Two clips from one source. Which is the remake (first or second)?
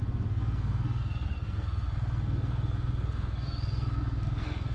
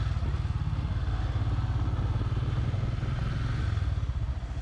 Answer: first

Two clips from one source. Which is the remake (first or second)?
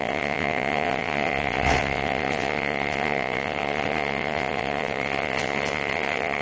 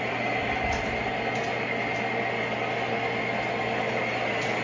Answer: first